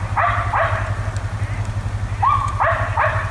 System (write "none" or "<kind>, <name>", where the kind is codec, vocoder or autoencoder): none